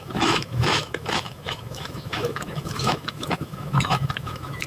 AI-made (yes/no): yes